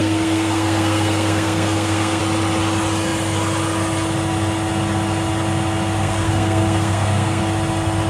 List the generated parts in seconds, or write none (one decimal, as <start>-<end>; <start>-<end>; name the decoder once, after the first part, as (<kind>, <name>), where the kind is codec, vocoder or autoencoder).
0.0-2.2 (codec, SNAC); 6.0-7.4